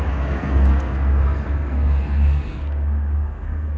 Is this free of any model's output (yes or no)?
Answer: no